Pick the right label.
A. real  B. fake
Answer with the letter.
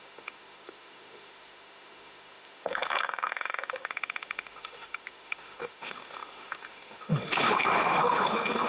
B